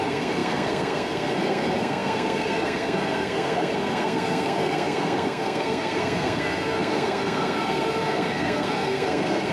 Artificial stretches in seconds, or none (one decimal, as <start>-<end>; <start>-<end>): 0.0-9.5